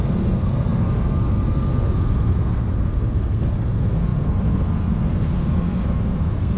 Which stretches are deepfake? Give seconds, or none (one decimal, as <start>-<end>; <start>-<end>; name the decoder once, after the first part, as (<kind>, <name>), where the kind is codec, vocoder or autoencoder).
0.0-6.6 (codec, SNAC)